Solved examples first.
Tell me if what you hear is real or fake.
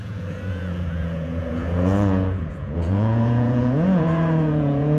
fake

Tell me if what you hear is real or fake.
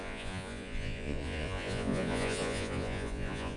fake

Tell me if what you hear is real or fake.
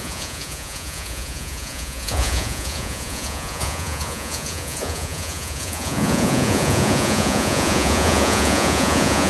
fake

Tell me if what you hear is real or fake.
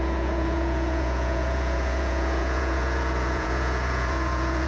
fake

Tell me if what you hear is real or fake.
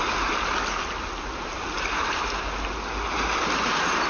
real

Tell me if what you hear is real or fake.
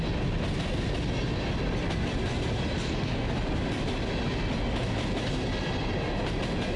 real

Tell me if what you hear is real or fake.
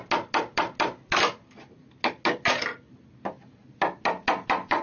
real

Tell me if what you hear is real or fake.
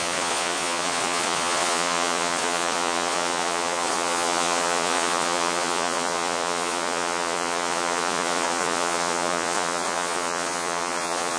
fake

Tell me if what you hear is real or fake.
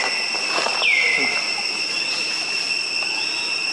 real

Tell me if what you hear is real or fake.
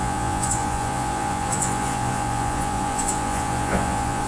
fake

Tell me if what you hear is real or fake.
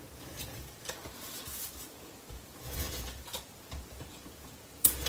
fake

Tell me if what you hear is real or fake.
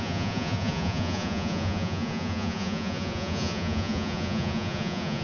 fake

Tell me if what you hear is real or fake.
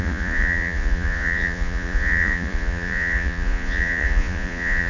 fake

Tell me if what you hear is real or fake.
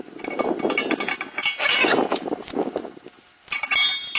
real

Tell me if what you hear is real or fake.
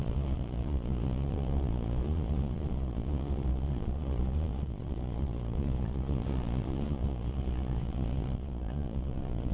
fake